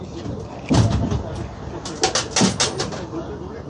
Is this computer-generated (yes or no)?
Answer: no